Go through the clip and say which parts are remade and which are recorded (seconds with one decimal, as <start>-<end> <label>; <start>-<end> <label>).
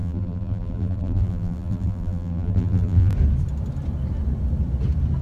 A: 0.0-3.1 remade; 3.1-5.2 recorded